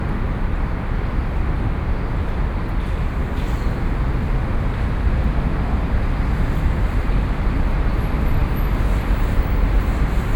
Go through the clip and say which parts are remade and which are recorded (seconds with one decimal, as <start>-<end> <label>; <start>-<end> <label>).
0.0-1.2 remade; 1.2-4.5 recorded; 4.5-8.4 remade; 8.4-9.2 recorded; 9.2-10.4 remade